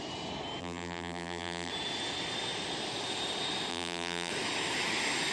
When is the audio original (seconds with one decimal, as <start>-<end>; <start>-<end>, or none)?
0.0-0.6; 1.7-3.7; 4.3-5.3